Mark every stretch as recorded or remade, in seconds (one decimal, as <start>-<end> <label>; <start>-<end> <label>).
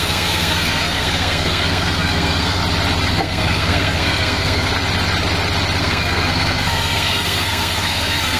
0.0-2.6 remade; 2.6-3.1 recorded; 3.1-4.7 remade; 4.7-5.8 recorded; 5.8-8.4 remade